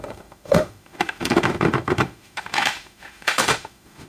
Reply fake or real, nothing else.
fake